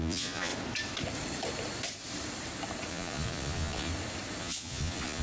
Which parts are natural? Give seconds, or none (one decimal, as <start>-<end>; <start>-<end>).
0.5-2.9; 3.9-4.4